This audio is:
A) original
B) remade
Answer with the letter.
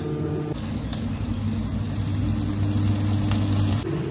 A